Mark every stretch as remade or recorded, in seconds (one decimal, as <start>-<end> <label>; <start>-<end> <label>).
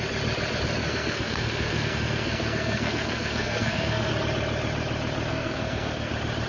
0.0-0.8 recorded; 0.8-4.1 remade; 4.1-5.3 recorded; 5.3-6.1 remade; 6.1-6.5 recorded